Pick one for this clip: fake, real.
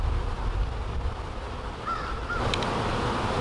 real